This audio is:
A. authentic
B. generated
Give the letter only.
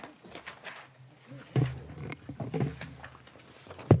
A